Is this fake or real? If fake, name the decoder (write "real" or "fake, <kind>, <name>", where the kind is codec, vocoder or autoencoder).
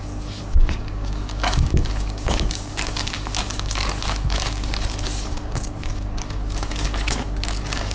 fake, codec, DAC